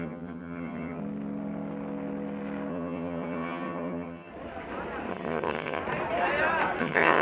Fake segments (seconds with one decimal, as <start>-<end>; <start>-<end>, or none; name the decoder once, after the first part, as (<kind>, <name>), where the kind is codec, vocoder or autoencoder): 0.0-1.0 (vocoder, HiFi-GAN); 2.7-4.3; 5.1-5.8; 6.8-7.2